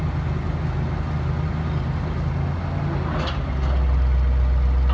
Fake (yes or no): no